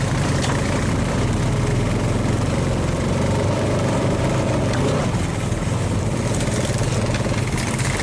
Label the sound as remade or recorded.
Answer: recorded